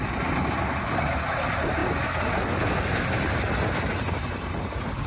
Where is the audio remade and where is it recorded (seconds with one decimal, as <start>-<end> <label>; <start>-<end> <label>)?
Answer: 0.0-5.1 recorded